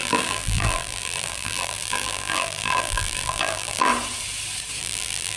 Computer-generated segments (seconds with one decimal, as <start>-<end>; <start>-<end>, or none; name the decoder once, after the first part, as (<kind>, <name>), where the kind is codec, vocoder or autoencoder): 0.0-3.9 (vocoder, BigVGAN v2); 4.8-5.4